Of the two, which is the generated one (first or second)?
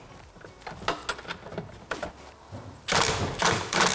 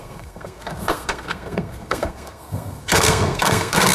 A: second